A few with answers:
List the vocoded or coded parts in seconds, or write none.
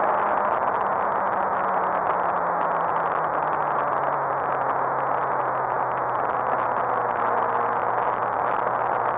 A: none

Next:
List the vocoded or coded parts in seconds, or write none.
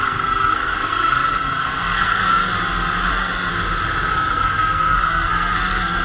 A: 0.0-2.3 (codec, SNAC); 3.1-3.5; 4.1-6.0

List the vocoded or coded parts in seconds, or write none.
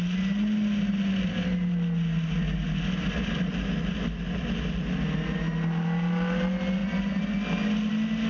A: none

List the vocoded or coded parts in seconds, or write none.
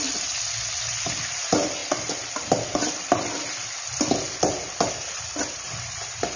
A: 0.0-1.8 (vocoder, BigVGAN v2); 4.9-6.4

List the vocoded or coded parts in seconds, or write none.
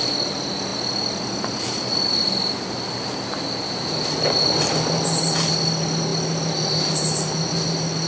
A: none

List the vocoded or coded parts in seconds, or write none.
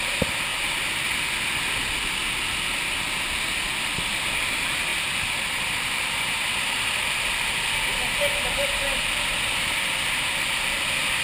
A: none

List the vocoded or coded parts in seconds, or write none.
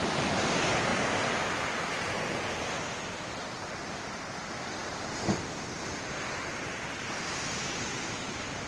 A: none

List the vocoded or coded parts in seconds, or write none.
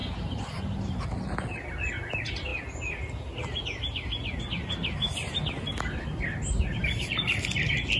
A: none